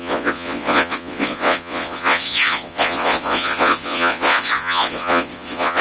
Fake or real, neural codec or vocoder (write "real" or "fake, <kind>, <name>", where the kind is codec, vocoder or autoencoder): fake, vocoder, Vocos